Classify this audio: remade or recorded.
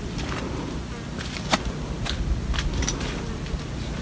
recorded